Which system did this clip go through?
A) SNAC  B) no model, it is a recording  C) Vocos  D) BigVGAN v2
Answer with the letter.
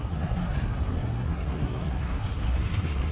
A